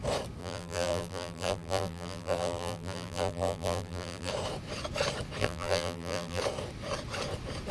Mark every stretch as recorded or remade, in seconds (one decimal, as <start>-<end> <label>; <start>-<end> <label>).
0.0-0.4 recorded; 0.4-4.3 remade; 4.3-5.4 recorded; 5.4-6.4 remade; 6.4-7.7 recorded